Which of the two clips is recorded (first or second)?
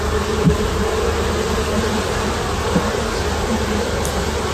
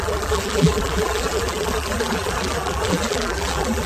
first